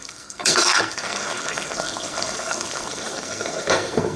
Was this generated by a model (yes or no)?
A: yes